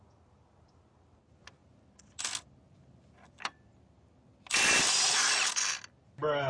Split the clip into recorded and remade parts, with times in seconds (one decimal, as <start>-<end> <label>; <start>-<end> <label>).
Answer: 0.0-6.5 recorded